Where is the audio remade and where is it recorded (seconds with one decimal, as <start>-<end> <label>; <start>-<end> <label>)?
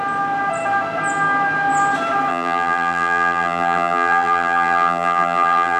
0.0-2.3 recorded; 2.3-5.8 remade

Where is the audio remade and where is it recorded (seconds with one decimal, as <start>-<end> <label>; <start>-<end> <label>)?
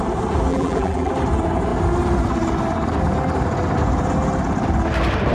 0.0-0.5 recorded; 0.5-1.1 remade; 1.1-5.3 recorded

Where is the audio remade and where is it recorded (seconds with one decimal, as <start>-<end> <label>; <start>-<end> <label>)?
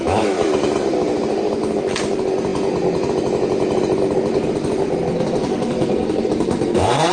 0.0-5.1 recorded; 5.1-7.1 remade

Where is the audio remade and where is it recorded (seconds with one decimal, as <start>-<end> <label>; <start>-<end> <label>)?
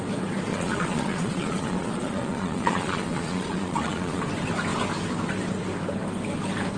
0.0-0.5 recorded; 0.5-4.2 remade; 4.2-6.8 recorded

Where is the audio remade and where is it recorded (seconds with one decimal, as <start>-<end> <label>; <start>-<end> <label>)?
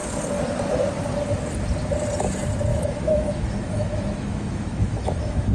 0.0-2.7 recorded; 2.7-5.5 remade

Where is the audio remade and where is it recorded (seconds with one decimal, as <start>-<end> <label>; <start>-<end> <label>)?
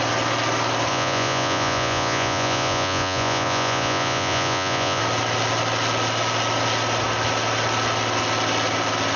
0.0-0.9 recorded; 0.9-5.0 remade; 5.0-9.2 recorded